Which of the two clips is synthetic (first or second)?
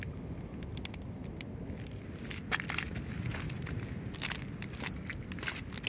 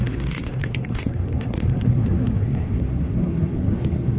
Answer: second